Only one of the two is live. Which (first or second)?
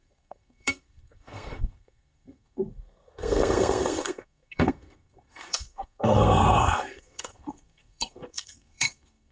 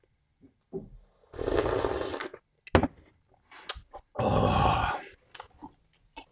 second